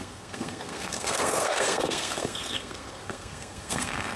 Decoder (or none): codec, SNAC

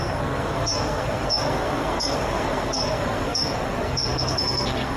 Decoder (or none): codec, SNAC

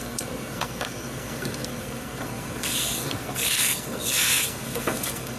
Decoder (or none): codec, SNAC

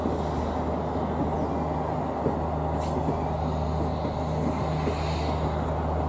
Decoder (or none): none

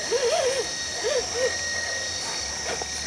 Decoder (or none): none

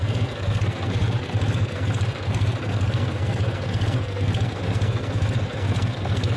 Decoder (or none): codec, SNAC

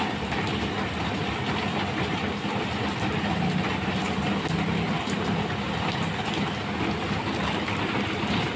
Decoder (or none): none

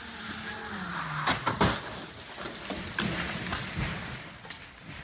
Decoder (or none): none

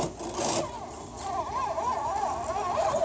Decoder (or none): none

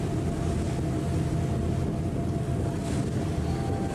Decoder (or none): none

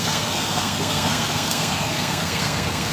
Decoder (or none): codec, SNAC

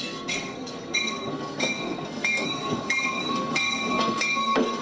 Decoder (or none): codec, SNAC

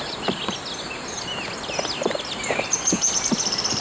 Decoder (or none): none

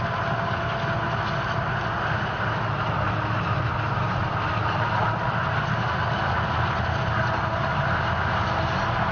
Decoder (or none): none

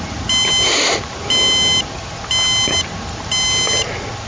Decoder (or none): none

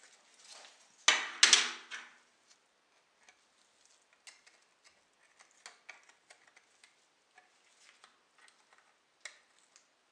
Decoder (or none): none